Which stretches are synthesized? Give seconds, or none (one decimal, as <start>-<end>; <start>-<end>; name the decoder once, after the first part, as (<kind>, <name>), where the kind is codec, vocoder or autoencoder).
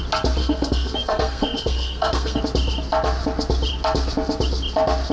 0.4-2.4 (codec, SNAC)